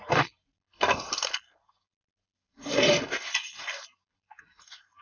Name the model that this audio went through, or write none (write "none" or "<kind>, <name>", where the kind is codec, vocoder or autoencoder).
none